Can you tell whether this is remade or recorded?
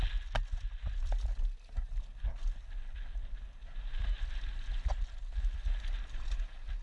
recorded